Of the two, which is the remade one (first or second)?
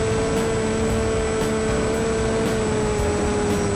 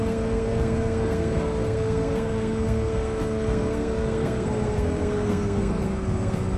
second